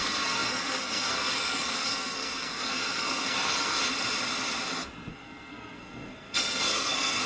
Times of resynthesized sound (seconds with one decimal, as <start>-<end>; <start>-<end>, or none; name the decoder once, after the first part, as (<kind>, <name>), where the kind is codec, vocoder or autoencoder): 0.0-3.8 (codec, SNAC); 5.1-7.3